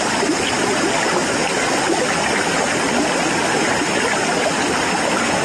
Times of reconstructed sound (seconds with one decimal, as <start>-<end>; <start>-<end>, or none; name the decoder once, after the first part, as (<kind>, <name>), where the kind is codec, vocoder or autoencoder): none